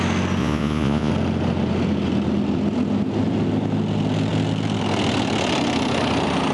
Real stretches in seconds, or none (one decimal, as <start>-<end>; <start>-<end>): 0.0-0.4; 1.1-6.5